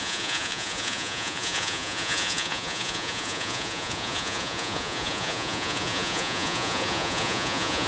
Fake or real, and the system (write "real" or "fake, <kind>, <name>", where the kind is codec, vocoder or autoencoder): fake, vocoder, Vocos